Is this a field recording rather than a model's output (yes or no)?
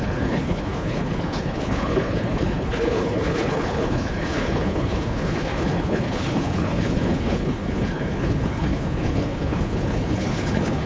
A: no